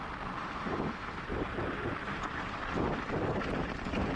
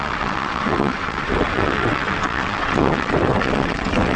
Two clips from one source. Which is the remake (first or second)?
second